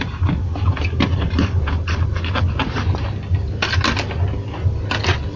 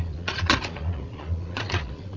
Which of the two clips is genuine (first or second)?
first